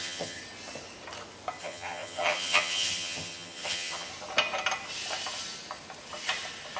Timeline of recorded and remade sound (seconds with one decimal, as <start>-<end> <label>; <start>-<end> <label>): 0.0-0.4 remade; 0.4-1.6 recorded; 1.6-4.1 remade; 4.1-6.8 recorded